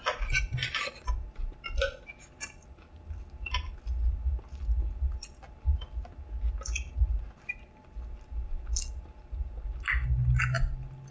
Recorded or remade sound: recorded